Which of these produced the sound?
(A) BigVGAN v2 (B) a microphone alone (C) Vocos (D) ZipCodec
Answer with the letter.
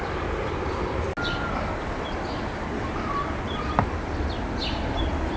B